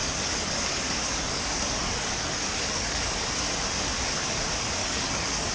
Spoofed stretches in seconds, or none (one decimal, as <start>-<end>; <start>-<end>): 0.0-3.3; 4.8-5.5